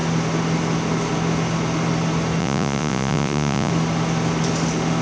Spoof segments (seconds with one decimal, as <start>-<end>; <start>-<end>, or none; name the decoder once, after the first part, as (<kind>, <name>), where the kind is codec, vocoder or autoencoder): 2.4-3.7 (vocoder, Vocos)